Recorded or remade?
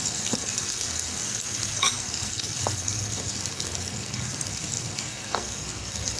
remade